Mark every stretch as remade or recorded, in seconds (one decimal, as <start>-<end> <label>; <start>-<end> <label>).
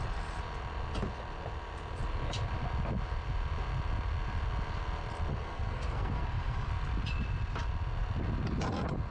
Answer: 0.0-5.3 recorded; 5.3-6.7 remade; 6.7-9.1 recorded